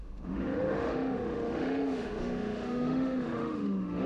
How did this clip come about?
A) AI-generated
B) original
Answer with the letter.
A